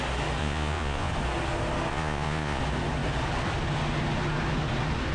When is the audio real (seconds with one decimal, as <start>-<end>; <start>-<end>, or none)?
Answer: 0.0-0.4; 1.1-1.9; 2.6-5.1